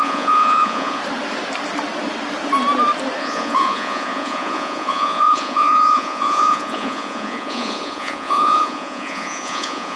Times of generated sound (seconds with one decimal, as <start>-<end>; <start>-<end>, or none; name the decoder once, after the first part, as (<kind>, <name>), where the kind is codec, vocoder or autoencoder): 0.0-1.0 (vocoder, Vocos); 3.2-10.0